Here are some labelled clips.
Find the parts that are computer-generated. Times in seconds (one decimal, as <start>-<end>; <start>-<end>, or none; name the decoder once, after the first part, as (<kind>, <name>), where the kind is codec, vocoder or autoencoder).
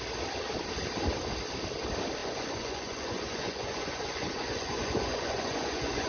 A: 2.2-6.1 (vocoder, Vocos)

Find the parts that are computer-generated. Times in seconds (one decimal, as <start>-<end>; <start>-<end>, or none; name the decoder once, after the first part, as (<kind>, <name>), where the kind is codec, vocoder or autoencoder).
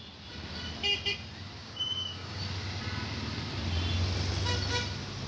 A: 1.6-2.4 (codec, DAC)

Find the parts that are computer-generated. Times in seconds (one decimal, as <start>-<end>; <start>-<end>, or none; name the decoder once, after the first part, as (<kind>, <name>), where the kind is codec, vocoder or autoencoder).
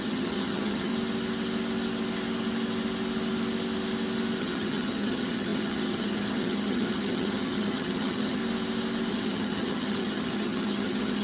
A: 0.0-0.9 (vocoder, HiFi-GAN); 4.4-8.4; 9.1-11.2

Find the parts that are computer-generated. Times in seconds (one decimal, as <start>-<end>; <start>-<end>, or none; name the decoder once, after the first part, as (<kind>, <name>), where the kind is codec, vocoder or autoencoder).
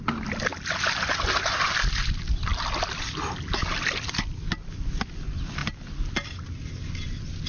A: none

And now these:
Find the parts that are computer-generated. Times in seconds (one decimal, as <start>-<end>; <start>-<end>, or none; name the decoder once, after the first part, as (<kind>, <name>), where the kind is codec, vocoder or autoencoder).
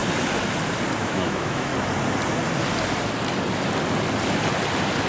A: 1.0-1.7 (autoencoder, DAC-VAE)